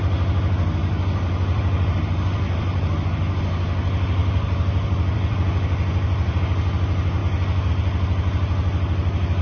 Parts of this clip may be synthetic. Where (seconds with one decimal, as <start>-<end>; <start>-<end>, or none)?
0.8-3.4; 4.2-6.4; 7.2-7.7